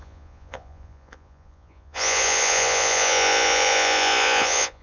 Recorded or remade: remade